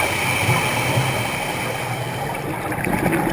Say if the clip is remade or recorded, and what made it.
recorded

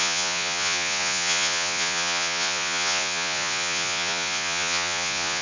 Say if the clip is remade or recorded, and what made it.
remade, vocoder, Vocos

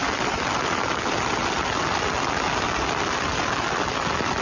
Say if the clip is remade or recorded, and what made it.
recorded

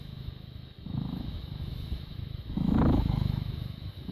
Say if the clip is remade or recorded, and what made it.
remade, autoencoder, DAC-VAE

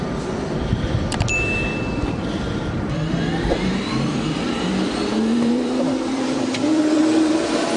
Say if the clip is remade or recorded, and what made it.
remade, vocoder, BigVGAN v2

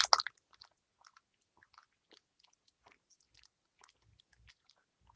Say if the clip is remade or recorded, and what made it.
recorded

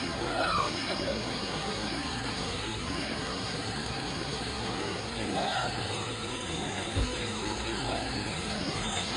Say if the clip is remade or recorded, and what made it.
remade, codec, SNAC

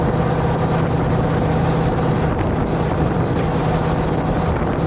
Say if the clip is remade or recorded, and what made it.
recorded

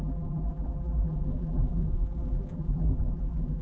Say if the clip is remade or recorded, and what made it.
remade, vocoder, BigVGAN v2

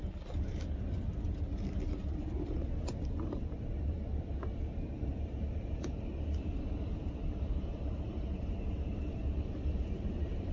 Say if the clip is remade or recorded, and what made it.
remade, vocoder, BigVGAN v2